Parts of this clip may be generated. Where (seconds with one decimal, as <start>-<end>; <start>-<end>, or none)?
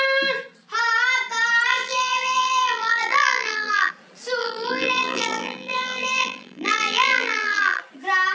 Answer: 1.7-3.9; 4.4-7.8